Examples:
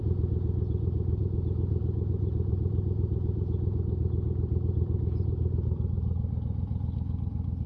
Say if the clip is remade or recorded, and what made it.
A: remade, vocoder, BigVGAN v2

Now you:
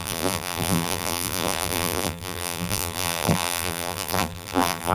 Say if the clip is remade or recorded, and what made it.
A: remade, vocoder, BigVGAN v2